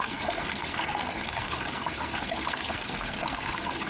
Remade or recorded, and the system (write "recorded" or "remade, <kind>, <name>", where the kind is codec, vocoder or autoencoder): remade, codec, SNAC